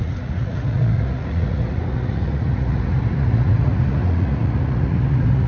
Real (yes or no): no